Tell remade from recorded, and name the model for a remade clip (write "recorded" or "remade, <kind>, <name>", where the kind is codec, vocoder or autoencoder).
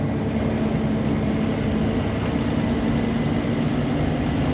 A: recorded